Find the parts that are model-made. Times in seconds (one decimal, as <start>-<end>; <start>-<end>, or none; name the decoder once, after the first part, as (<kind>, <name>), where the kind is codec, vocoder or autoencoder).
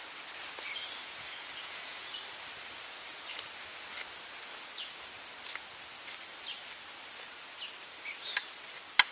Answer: 1.0-2.1 (vocoder, Vocos)